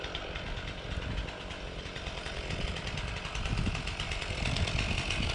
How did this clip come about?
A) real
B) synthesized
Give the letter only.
B